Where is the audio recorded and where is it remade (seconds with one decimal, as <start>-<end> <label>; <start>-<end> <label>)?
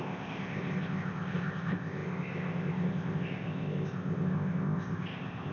0.0-5.5 remade